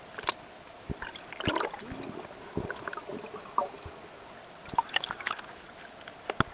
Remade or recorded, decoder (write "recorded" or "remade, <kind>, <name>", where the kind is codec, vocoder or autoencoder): recorded